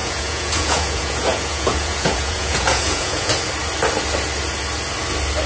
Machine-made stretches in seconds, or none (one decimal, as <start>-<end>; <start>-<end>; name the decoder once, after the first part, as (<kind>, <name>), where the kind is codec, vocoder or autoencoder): 0.0-3.3 (vocoder, Vocos)